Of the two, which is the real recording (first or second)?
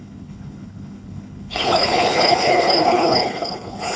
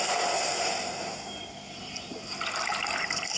second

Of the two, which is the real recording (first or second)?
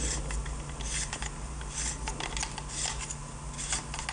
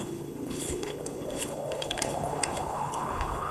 first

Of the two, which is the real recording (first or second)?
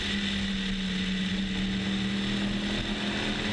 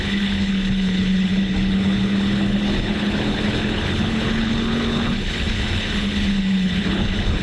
first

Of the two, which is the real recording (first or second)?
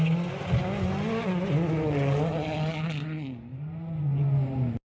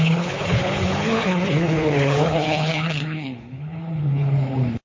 first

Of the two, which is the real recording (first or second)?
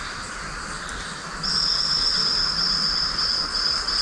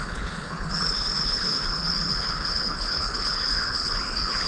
first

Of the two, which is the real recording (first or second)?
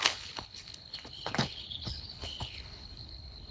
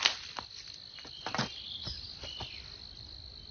second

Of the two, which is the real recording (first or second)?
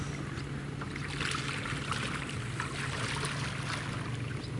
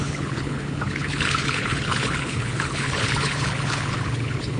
first